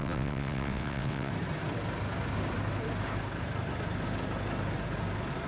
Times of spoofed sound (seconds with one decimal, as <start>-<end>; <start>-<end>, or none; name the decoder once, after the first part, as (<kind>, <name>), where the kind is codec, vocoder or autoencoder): 0.0-1.3 (vocoder, WaveNeXt)